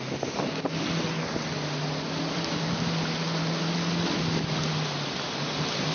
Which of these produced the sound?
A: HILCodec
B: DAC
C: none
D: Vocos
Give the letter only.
C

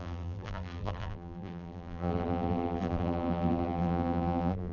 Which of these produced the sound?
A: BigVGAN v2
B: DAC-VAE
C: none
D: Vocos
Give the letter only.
A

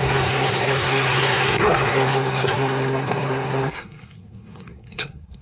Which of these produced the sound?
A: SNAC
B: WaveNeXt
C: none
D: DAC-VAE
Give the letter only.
A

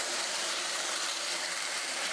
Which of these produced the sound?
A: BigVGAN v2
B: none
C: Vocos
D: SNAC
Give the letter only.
A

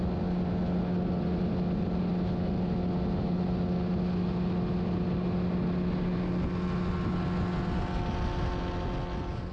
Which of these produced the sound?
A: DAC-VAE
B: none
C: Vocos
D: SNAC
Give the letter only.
B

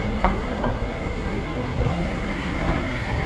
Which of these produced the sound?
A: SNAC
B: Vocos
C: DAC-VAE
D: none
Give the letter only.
A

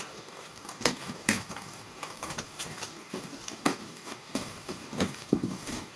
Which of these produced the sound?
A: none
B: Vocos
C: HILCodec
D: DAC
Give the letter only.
D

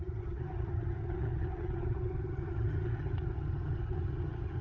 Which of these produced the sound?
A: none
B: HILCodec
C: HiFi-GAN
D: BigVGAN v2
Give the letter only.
C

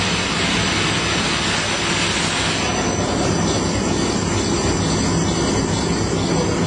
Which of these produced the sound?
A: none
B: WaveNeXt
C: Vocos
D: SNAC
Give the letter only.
A